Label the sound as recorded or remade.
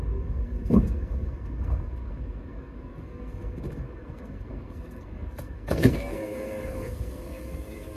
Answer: remade